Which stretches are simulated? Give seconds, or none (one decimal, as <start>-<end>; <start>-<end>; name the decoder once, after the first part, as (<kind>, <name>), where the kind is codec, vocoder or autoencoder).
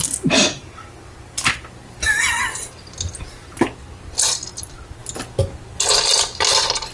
none